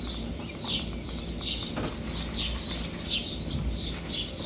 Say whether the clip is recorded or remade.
recorded